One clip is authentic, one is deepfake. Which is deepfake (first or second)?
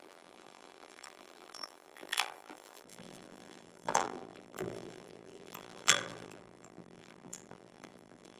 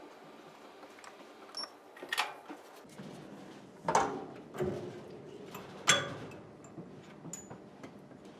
first